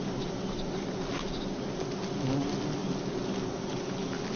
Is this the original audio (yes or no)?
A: yes